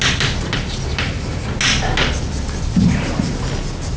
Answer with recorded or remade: recorded